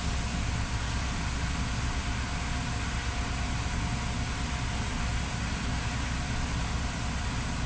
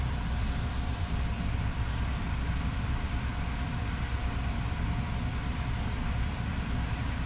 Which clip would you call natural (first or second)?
first